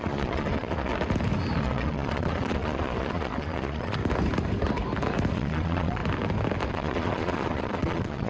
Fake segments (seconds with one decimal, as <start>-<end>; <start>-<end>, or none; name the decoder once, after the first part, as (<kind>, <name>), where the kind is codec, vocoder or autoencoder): 0.0-0.9 (vocoder, Vocos); 1.6-4.0; 5.3-6.0; 6.7-8.3